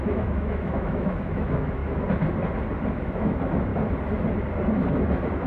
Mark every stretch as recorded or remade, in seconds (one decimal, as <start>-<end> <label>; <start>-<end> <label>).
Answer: 0.0-1.8 remade; 1.8-2.9 recorded; 2.9-3.7 remade; 3.7-5.5 recorded